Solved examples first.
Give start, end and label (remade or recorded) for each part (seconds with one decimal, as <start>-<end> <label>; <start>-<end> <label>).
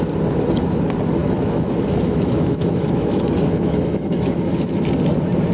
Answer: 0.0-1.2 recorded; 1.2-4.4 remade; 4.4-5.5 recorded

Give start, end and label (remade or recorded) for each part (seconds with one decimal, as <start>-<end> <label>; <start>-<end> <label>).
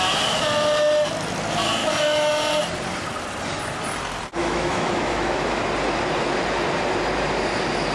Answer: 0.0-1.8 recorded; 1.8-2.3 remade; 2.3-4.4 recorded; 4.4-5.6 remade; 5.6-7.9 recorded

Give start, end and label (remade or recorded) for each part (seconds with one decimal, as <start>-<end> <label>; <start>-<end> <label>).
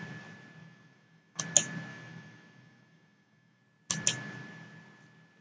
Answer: 0.0-0.6 recorded; 0.6-1.4 remade; 1.4-1.9 recorded; 1.9-3.6 remade; 3.6-5.4 recorded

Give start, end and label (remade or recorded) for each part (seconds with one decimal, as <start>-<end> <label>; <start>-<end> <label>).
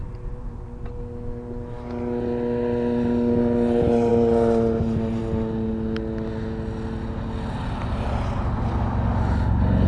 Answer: 0.0-9.9 recorded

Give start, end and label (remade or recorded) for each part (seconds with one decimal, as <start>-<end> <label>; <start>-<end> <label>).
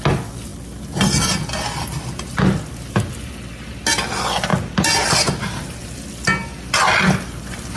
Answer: 0.0-7.8 recorded